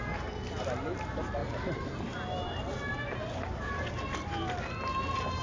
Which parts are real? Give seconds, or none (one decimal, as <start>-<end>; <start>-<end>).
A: 0.0-5.4